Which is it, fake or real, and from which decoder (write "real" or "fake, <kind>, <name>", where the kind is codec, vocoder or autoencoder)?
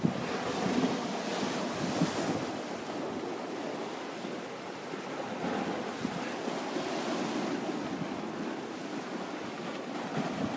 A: real